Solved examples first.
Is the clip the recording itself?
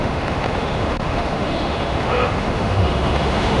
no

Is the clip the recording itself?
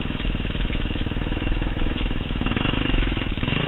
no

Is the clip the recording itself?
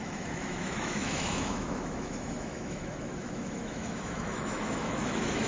no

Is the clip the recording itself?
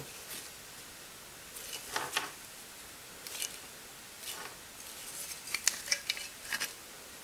yes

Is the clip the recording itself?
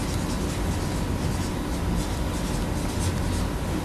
yes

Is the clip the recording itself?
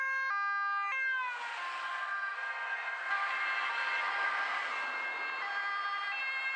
yes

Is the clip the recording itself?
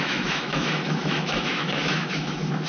no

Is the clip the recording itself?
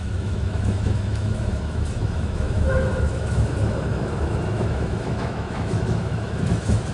no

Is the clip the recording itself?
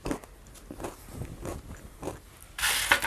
yes